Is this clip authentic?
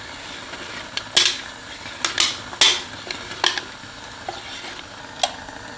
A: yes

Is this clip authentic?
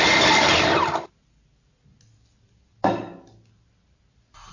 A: yes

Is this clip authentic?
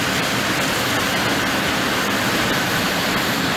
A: yes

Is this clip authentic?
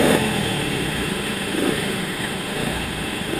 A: no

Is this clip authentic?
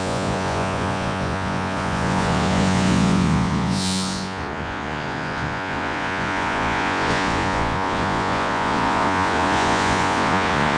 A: no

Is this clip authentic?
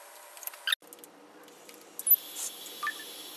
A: yes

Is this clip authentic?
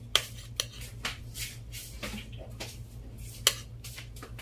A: yes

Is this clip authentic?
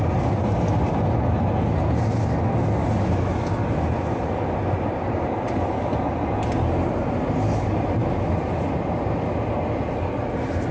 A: yes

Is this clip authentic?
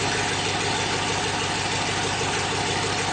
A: yes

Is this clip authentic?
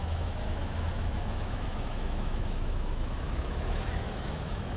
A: no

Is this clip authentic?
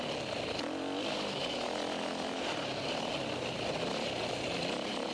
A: yes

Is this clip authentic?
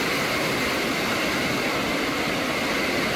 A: yes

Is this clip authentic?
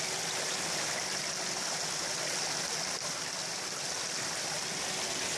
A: yes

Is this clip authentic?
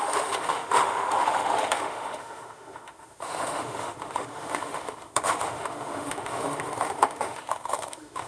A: no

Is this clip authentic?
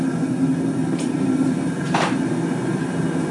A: yes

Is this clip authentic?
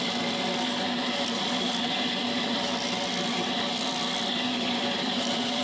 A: no